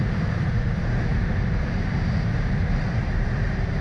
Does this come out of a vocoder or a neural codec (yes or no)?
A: yes